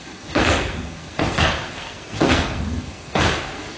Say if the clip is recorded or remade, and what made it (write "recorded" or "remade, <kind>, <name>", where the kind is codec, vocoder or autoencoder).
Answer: remade, codec, SNAC